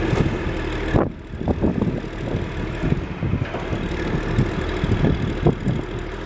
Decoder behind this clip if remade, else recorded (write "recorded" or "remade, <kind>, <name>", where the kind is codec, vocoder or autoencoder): recorded